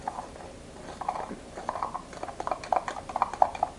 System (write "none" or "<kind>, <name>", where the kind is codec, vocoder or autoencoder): none